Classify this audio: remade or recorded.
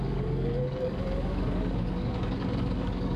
remade